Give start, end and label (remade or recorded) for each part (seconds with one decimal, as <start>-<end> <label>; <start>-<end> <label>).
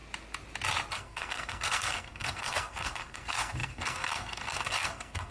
0.0-0.9 recorded; 0.9-5.3 remade